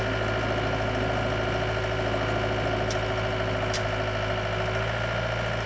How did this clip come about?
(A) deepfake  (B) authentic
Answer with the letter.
B